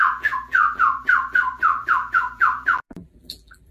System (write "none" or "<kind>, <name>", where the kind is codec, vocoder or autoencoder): vocoder, BigVGAN v2